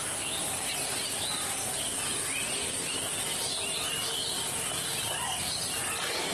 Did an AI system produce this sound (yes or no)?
no